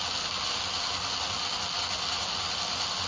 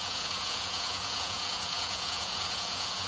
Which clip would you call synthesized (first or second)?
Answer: second